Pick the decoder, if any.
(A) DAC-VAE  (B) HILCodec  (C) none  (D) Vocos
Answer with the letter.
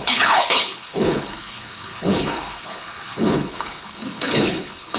B